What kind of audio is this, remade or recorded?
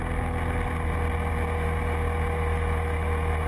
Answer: recorded